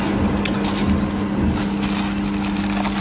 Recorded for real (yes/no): yes